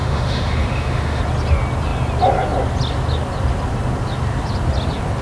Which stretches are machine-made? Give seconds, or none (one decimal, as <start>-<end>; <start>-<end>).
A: 0.0-1.2